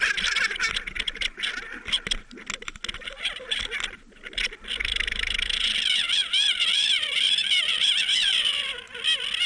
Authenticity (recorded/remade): recorded